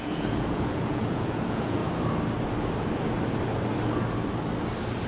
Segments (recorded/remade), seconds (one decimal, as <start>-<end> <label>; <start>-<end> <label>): 0.0-1.8 remade; 1.8-5.1 recorded